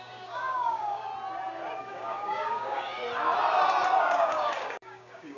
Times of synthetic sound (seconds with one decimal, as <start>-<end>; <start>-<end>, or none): 0.0-1.1; 1.8-3.0; 4.0-5.4